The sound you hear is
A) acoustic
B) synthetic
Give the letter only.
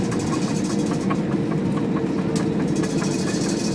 A